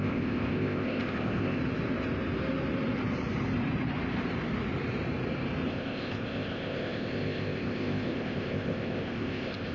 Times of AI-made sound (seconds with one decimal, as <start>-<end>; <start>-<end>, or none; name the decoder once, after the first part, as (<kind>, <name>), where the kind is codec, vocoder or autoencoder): 0.0-1.6 (codec, ZipCodec); 5.7-9.7